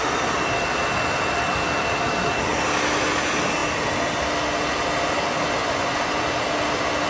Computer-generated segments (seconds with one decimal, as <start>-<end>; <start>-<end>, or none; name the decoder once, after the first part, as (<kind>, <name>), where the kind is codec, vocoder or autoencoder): 5.6-6.2 (vocoder, Vocos)

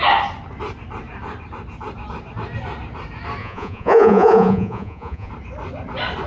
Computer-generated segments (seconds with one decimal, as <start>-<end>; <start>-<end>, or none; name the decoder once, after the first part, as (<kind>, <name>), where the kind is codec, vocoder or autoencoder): 3.4-5.3 (vocoder, Vocos)

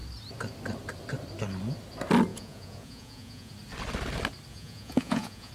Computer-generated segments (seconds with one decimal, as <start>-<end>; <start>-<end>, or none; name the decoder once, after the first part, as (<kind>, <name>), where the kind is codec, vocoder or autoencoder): 2.3-3.5 (vocoder, Vocos); 4.5-5.5

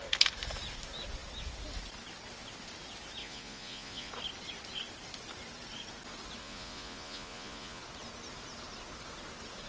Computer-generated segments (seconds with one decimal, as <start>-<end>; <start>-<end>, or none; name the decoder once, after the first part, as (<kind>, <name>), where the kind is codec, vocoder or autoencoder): 3.2-4.1 (vocoder, Vocos); 6.4-7.8